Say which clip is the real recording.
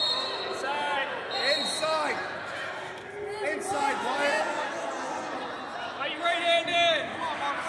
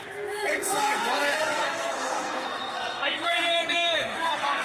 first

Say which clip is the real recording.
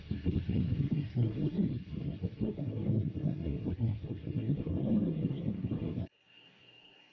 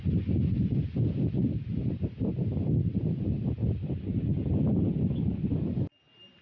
second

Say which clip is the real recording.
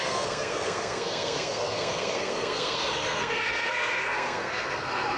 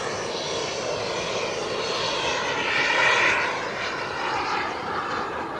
second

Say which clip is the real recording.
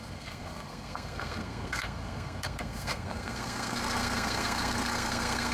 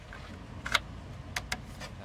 second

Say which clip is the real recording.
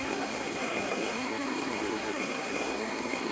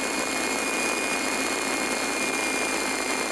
second